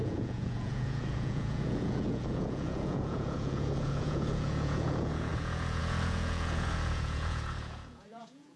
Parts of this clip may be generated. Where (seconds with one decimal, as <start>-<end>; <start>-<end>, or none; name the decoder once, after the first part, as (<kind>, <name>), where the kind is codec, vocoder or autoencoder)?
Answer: 0.0-8.6 (vocoder, Vocos)